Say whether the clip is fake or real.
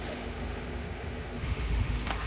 fake